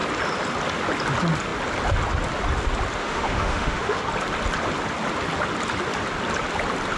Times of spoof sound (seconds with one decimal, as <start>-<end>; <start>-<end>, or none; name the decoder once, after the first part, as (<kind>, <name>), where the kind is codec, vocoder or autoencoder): 3.0-4.0 (autoencoder, DAC-VAE)